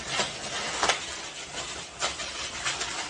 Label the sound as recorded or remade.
recorded